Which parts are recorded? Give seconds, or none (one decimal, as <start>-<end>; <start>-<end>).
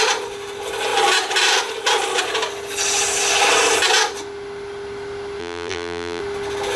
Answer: 0.0-5.4; 6.2-6.8